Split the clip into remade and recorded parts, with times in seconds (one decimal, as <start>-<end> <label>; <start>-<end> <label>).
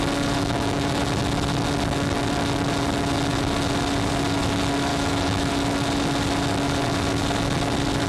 0.0-0.4 recorded; 0.4-1.0 remade; 1.0-4.9 recorded; 4.9-5.5 remade; 5.5-8.1 recorded